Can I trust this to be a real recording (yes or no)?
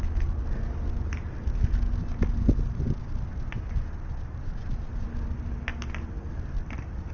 yes